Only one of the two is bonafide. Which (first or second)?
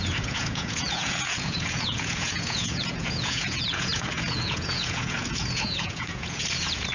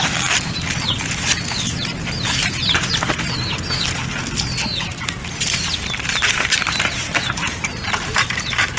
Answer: second